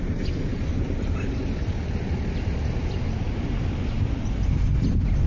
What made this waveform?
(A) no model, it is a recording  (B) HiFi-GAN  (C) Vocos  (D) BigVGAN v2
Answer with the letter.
A